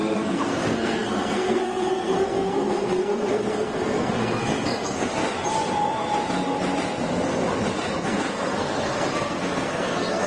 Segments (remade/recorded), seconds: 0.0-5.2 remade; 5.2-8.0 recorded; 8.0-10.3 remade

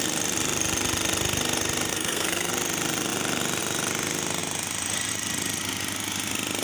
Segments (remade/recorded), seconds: 0.0-1.9 recorded; 1.9-2.5 remade; 2.5-6.6 recorded